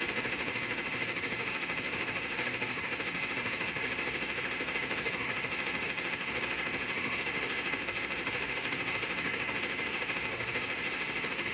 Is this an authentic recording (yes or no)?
no